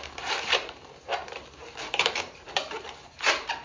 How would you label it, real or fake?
fake